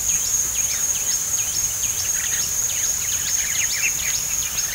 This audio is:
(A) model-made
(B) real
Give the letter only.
B